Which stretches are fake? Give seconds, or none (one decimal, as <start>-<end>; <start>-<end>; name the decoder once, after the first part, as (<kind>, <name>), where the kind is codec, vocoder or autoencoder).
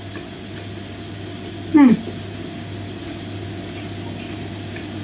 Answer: none